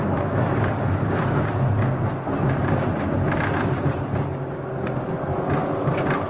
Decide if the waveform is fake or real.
real